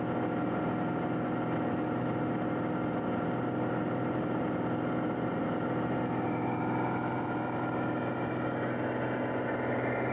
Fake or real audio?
real